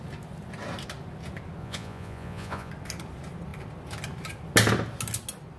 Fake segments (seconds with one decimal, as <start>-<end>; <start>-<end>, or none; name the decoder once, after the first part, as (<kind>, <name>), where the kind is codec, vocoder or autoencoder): 1.6-2.7 (vocoder, Vocos)